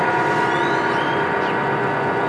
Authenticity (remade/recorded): remade